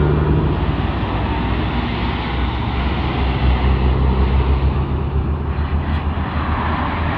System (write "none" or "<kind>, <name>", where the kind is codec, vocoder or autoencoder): none